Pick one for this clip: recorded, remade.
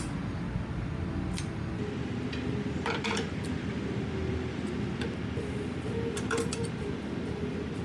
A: recorded